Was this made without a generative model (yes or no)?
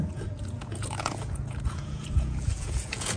no